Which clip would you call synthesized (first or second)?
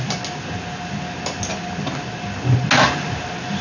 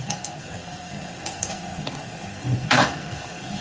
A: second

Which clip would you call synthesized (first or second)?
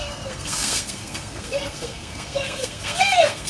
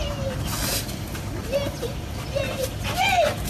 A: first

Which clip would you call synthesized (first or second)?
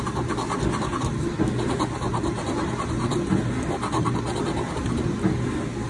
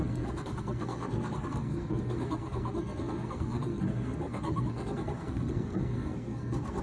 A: second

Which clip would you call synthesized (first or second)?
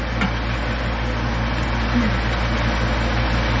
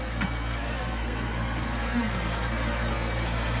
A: second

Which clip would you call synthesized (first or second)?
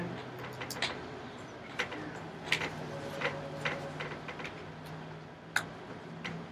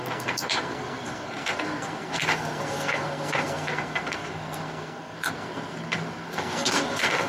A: second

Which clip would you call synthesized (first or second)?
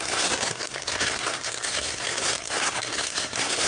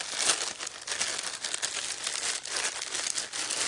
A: first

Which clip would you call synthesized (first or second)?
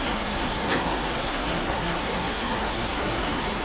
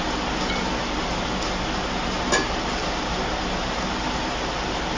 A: first